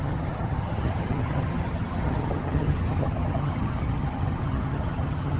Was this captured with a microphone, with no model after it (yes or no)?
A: no